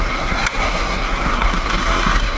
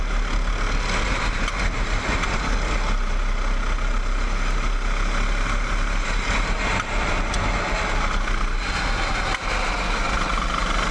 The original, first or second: second